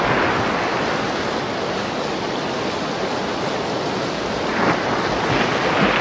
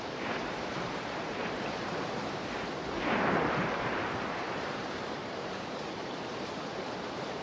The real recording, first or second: first